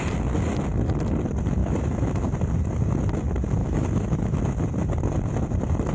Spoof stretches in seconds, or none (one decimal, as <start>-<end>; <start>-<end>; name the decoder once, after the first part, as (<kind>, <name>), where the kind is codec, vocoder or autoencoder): 1.6-2.2 (autoencoder, DAC-VAE); 3.6-4.4